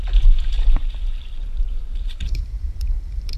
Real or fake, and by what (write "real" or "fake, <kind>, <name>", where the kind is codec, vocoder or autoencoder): fake, vocoder, BigVGAN v2